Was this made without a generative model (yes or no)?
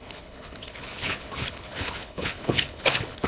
no